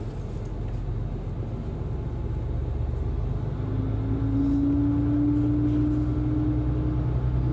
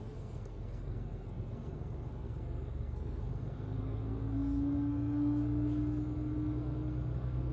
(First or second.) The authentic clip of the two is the first